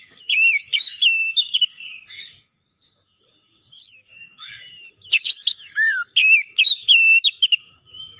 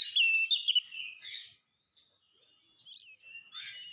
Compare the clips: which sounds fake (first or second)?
first